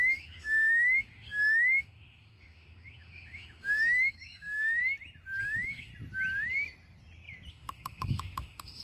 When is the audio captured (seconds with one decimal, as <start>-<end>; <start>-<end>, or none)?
4.8-5.4; 5.9-7.5